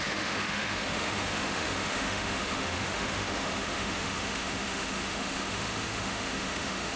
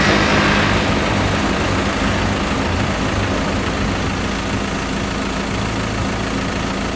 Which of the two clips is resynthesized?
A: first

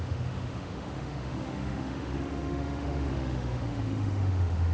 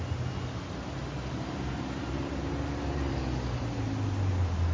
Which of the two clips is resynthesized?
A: first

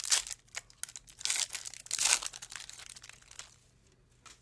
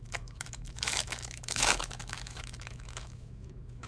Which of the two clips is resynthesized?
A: second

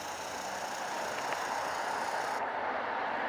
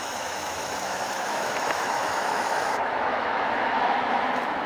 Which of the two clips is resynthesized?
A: second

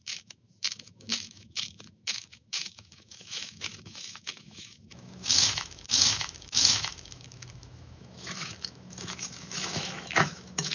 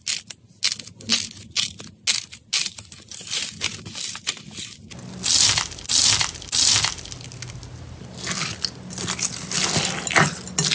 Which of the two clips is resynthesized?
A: first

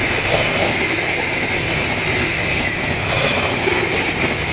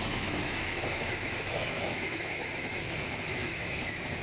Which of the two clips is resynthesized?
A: second